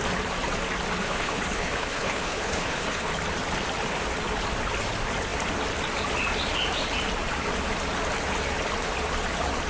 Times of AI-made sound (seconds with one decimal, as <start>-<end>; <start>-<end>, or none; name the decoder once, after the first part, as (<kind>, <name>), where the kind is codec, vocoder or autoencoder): 1.0-3.1 (codec, HILCodec)

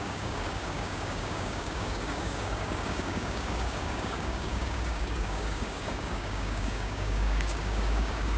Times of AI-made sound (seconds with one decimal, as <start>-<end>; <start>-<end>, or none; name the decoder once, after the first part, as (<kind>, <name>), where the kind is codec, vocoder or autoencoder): 0.0-8.4 (codec, DAC)

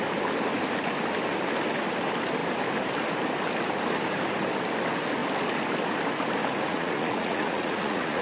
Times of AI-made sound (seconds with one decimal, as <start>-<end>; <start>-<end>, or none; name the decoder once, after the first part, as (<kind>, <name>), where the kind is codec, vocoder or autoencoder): 6.7-8.2 (vocoder, Vocos)

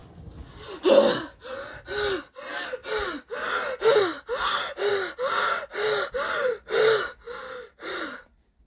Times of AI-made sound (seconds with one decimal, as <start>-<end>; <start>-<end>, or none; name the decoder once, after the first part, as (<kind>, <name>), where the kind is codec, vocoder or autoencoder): none

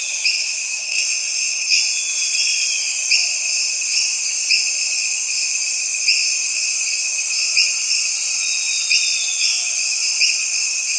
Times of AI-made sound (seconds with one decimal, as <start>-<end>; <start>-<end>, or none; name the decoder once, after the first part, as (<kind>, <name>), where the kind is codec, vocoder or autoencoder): 0.8-1.8 (codec, SNAC)